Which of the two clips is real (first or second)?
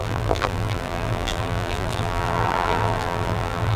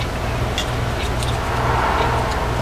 second